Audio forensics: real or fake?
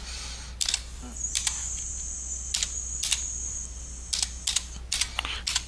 real